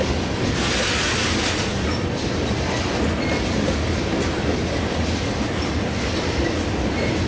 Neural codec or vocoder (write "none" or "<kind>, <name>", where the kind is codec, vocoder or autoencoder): none